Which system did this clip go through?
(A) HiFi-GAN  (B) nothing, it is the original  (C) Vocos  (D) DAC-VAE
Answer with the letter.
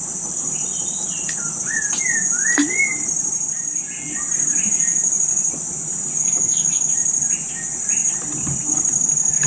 B